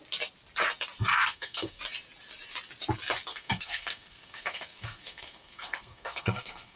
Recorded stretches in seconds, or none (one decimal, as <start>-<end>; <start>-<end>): 0.0-1.1; 1.8-3.3